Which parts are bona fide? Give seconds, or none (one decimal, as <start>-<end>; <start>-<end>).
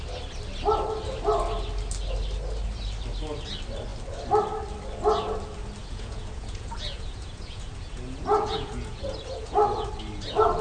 0.0-5.8; 9.9-10.6